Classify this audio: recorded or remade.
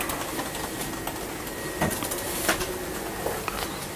recorded